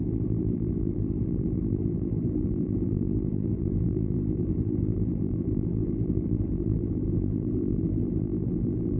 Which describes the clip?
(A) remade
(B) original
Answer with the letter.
A